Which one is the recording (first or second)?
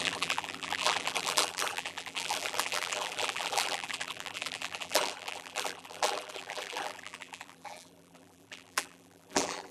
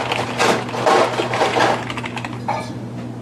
second